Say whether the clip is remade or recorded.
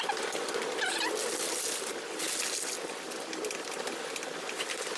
recorded